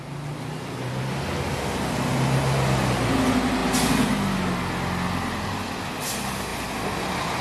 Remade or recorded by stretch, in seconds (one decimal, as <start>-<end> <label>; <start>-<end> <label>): 0.0-7.4 recorded